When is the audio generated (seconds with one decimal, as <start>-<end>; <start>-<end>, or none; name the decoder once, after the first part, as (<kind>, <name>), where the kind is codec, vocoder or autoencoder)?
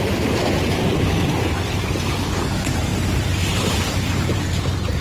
none